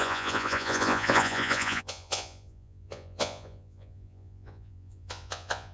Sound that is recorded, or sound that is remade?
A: remade